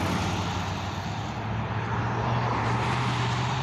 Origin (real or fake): real